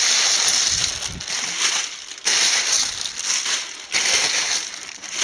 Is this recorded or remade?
recorded